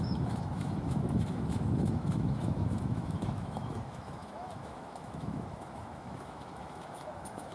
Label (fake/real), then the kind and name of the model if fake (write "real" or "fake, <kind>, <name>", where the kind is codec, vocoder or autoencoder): fake, autoencoder, DAC-VAE